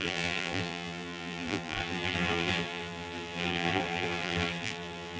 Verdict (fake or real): fake